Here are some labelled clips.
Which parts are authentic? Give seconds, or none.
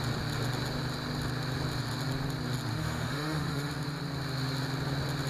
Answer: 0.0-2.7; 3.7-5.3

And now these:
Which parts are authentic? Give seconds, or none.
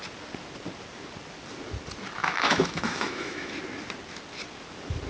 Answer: 0.0-2.2; 3.5-5.1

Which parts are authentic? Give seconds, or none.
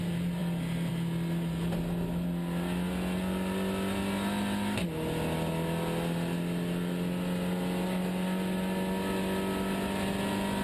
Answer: 0.0-10.6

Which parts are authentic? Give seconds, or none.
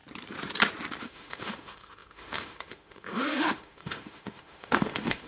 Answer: 0.0-1.0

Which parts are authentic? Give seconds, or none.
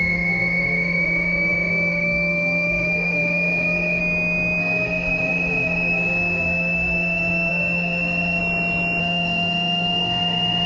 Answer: 4.0-4.6; 8.4-9.0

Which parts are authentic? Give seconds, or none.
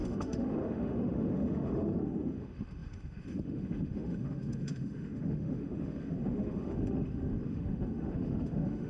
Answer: none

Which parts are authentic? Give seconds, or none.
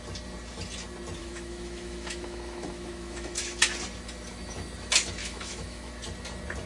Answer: 0.0-1.2; 3.4-5.2; 5.9-6.7